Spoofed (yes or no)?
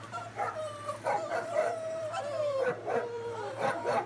yes